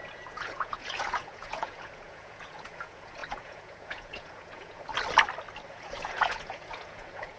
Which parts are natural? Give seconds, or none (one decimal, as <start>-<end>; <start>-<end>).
4.9-5.7